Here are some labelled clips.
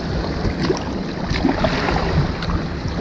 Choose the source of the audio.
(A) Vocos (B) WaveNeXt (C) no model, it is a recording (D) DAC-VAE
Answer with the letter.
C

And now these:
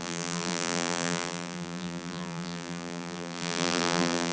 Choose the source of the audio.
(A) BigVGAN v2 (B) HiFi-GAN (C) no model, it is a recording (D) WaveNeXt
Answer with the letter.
A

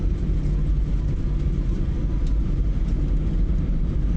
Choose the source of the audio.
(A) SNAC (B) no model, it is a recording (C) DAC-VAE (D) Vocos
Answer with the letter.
B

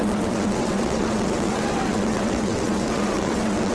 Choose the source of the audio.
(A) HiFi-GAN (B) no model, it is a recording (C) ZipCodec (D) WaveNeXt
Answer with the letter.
D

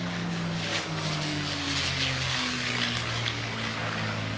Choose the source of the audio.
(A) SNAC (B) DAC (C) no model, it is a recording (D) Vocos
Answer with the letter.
B